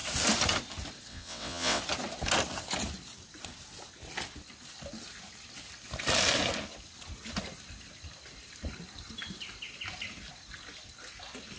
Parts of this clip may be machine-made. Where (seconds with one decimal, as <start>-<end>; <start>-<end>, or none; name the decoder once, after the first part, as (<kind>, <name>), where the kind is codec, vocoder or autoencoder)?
1.1-1.8 (vocoder, WaveNeXt)